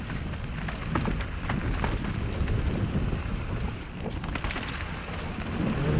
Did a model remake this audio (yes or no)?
no